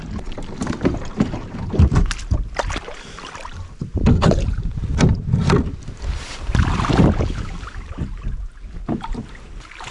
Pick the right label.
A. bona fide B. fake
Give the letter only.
B